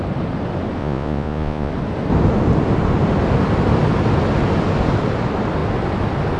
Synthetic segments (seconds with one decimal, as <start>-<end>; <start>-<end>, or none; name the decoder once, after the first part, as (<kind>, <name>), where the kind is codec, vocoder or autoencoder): 0.8-1.7 (vocoder, Vocos)

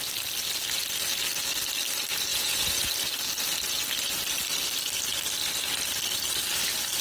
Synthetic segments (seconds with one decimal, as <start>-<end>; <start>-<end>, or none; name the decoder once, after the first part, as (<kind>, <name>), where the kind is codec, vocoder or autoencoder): 2.3-2.9 (vocoder, Vocos)